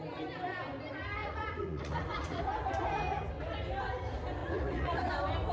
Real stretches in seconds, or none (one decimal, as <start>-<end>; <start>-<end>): 0.0-1.2; 2.4-4.4; 5.1-5.5